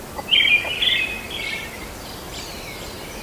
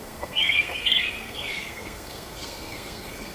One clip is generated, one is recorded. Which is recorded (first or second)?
first